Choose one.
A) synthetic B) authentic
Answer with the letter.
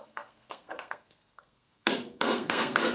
A